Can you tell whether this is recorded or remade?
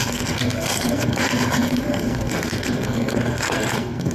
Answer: remade